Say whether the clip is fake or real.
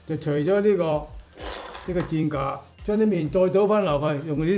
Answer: fake